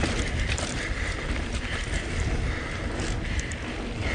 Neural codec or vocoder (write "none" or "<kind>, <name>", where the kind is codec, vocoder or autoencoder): none